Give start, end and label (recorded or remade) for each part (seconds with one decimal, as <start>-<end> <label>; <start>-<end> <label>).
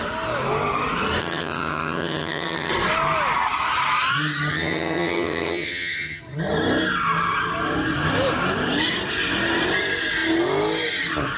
0.0-1.2 recorded; 1.2-2.7 remade; 2.7-4.5 recorded; 4.5-6.2 remade; 6.2-11.4 recorded